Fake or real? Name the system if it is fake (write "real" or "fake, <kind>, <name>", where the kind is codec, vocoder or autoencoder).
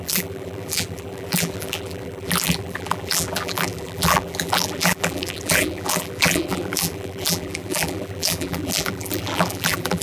fake, vocoder, BigVGAN v2